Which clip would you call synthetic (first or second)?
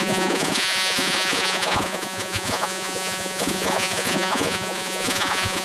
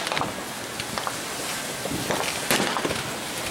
first